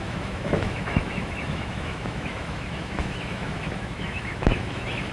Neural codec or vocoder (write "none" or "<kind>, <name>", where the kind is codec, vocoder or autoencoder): autoencoder, DAC-VAE